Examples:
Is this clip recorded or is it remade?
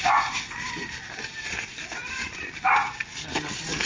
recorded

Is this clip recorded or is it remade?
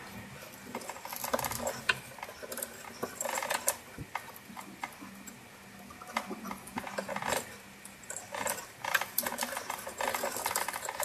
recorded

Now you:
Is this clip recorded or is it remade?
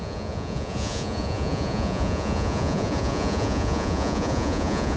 remade